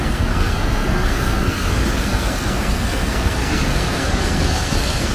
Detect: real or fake fake